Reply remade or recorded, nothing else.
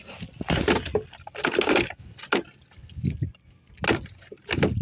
recorded